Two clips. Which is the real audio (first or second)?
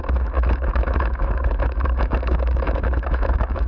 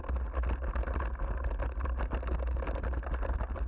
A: second